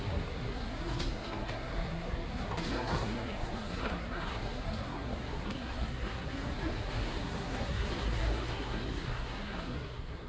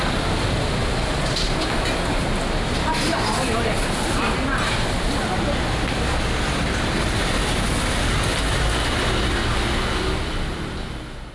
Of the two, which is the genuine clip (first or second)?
second